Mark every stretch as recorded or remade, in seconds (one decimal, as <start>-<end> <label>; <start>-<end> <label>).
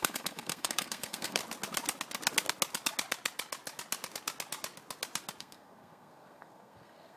0.0-1.4 remade; 1.4-5.4 recorded; 5.4-7.2 remade